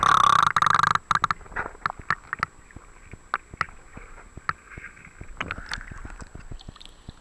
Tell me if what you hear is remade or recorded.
recorded